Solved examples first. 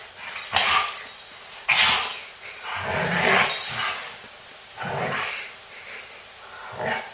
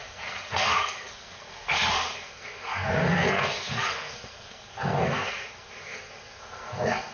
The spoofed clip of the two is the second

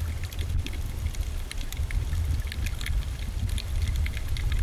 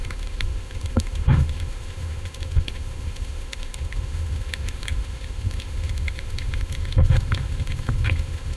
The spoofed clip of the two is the second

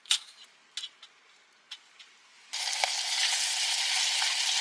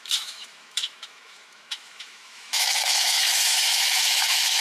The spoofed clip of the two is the second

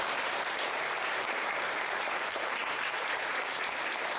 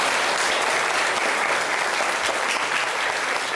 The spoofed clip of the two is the first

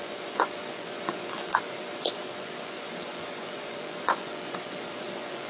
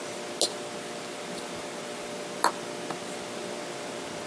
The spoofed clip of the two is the first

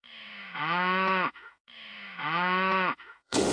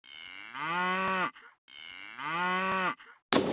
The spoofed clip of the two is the first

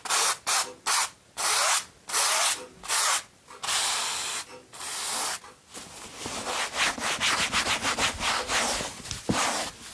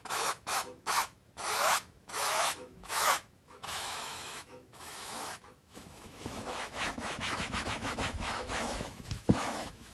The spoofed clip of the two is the second